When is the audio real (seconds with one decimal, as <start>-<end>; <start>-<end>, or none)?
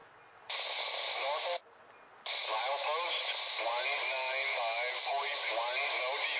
0.0-6.4